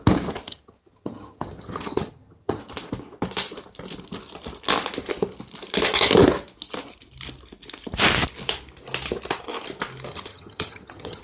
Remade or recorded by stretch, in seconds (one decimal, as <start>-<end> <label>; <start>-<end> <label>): 0.0-0.5 recorded; 0.5-2.6 remade; 2.6-10.1 recorded; 10.1-11.2 remade